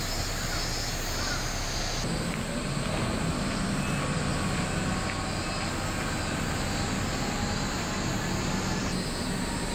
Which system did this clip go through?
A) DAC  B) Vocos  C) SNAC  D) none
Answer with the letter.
D